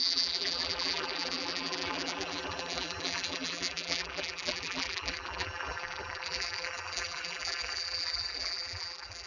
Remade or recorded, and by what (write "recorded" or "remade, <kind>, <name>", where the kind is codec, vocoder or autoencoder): remade, vocoder, BigVGAN v2